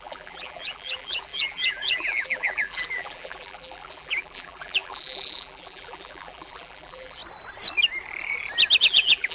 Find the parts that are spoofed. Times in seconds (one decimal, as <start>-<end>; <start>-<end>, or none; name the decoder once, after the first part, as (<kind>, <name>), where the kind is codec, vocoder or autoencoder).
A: 0.0-7.2 (vocoder, BigVGAN v2); 8.8-9.3

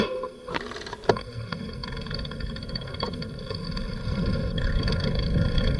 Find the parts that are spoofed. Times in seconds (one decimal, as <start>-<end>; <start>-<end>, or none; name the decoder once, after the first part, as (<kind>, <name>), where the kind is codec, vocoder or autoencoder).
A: 0.0-0.5 (codec, SNAC); 1.1-5.8

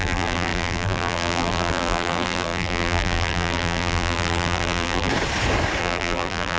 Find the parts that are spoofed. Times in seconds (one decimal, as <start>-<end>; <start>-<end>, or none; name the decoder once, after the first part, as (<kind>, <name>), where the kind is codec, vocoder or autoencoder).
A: 0.0-5.1 (vocoder, BigVGAN v2); 5.8-6.6